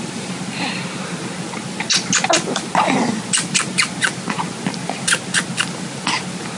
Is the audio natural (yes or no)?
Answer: yes